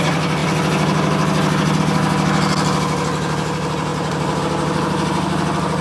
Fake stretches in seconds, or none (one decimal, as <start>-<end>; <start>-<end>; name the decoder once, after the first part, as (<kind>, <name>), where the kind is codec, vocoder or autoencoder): none

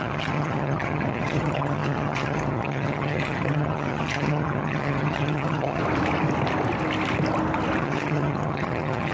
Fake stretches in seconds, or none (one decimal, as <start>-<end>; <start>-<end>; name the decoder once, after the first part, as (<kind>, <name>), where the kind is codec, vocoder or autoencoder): 0.0-5.8 (vocoder, HiFi-GAN); 7.8-9.1

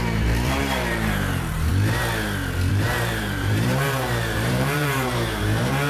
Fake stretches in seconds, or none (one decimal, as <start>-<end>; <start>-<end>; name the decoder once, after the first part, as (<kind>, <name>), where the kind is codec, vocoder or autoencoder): 0.0-1.7 (vocoder, BigVGAN v2); 2.7-5.9

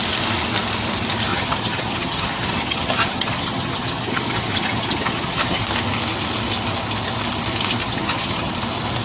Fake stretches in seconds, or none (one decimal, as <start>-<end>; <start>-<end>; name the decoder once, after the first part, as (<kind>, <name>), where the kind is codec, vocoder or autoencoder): 1.3-5.6 (vocoder, HiFi-GAN); 7.8-8.5